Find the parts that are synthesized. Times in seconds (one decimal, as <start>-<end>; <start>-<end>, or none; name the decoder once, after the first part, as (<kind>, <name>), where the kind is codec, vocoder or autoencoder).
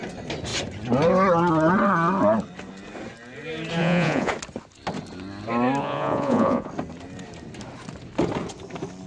3.8-4.3 (vocoder, Vocos); 5.8-6.7